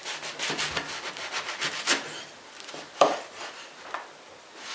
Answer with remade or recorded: recorded